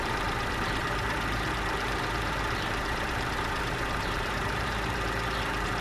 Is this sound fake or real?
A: fake